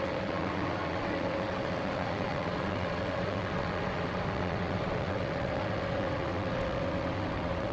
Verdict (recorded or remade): remade